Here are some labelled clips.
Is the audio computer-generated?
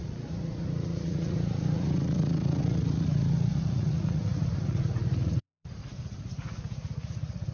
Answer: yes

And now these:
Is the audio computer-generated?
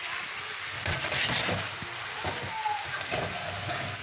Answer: no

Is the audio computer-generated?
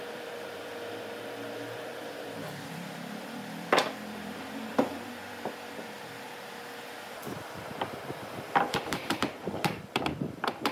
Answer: yes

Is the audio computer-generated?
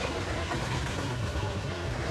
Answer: yes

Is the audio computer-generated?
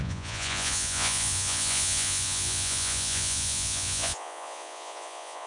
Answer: yes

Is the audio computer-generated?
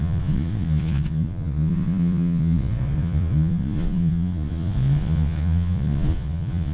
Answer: yes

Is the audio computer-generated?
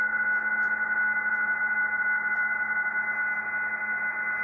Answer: no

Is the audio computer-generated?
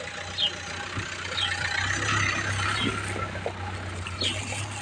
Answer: no